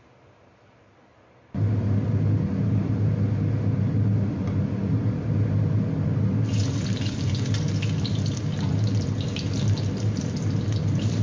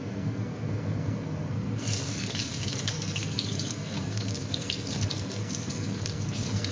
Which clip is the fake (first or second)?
second